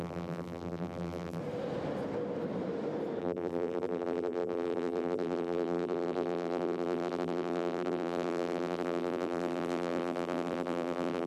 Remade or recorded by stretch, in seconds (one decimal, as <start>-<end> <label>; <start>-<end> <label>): 0.0-1.4 remade; 1.4-3.2 recorded; 3.2-11.3 remade